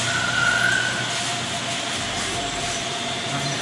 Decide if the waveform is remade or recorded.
recorded